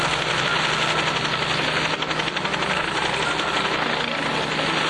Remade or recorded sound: recorded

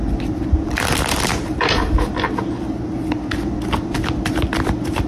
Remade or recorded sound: recorded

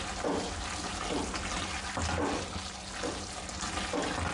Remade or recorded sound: recorded